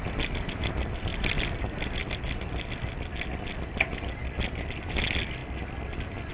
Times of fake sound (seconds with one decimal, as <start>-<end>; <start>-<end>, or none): none